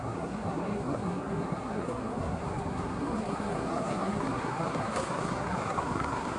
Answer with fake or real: fake